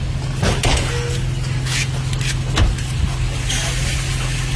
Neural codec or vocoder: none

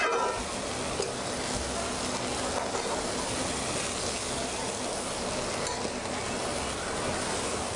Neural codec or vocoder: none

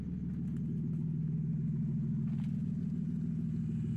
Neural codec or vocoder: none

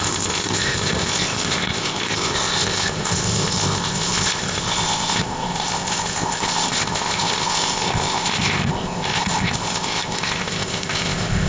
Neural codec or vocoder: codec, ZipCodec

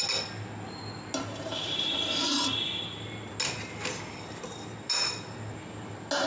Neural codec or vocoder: none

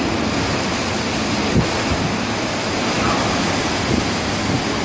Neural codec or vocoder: none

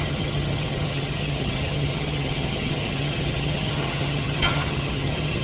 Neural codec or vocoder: vocoder, HiFi-GAN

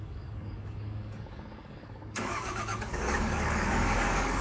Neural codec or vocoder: codec, DAC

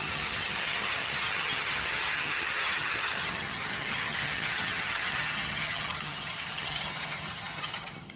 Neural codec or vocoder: vocoder, HiFi-GAN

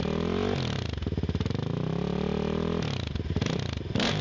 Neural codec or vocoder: none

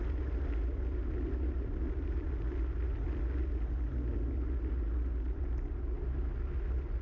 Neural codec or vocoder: none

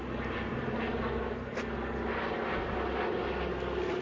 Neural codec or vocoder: none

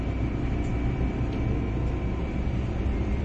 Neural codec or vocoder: none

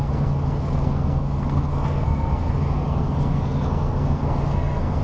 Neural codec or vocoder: codec, SNAC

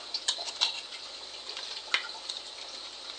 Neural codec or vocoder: none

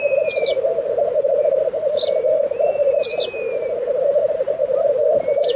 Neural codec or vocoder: none